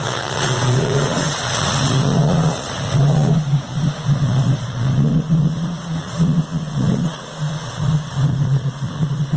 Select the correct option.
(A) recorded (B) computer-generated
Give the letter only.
B